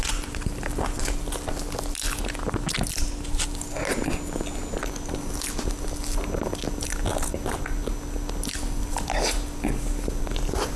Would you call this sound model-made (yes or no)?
no